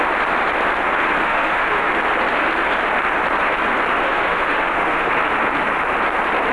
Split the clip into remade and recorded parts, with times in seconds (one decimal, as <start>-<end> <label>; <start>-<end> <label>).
0.0-1.2 recorded; 1.2-1.9 remade; 1.9-4.0 recorded; 4.0-5.1 remade; 5.1-6.5 recorded